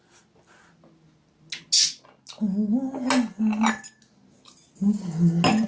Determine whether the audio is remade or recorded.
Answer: recorded